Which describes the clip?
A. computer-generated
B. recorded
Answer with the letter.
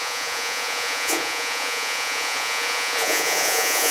A